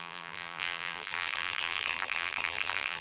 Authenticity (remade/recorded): remade